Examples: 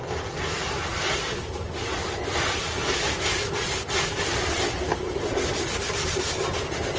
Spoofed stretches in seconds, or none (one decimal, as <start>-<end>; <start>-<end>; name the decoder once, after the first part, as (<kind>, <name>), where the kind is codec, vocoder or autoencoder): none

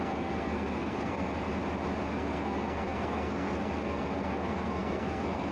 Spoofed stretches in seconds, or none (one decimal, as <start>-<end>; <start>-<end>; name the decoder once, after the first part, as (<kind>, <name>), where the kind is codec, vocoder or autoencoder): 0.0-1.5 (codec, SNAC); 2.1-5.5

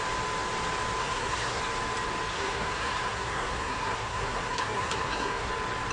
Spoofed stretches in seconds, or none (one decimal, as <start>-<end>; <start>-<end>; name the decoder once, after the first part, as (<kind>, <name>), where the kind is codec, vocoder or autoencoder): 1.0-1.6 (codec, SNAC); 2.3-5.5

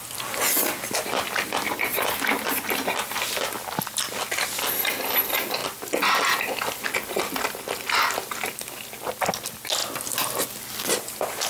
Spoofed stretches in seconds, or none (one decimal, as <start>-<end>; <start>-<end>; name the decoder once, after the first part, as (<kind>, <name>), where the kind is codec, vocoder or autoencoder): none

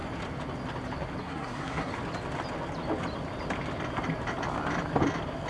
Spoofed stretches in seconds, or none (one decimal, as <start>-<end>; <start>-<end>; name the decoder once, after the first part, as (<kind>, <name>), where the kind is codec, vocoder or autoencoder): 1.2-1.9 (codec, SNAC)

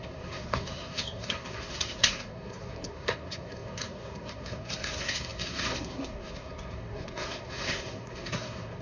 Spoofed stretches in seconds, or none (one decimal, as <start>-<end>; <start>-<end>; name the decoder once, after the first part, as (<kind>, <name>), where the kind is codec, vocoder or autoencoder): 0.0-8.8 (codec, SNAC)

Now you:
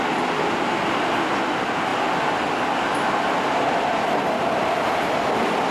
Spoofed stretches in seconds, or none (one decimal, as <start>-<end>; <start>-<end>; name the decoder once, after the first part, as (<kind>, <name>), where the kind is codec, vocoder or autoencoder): none

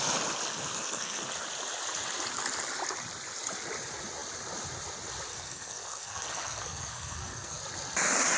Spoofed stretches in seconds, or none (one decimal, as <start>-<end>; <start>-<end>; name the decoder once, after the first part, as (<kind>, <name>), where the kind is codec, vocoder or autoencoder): 0.5-1.2 (codec, SNAC); 5.3-7.6